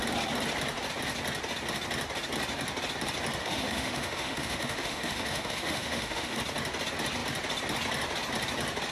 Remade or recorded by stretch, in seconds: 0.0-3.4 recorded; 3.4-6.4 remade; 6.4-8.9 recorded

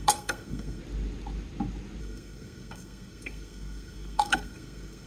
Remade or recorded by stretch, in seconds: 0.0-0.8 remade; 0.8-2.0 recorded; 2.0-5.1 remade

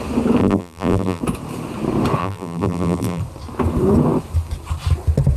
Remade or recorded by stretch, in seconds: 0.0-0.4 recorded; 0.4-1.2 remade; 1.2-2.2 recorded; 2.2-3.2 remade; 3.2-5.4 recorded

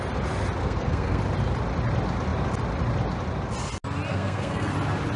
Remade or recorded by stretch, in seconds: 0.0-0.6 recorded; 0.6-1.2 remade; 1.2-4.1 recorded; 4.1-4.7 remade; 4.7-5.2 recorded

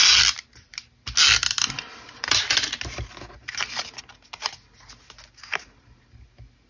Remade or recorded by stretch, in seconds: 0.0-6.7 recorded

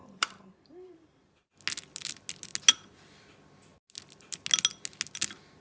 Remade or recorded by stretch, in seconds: 0.0-1.5 remade; 1.5-5.6 recorded

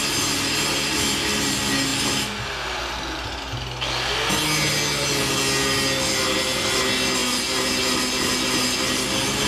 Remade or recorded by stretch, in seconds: 0.0-9.5 recorded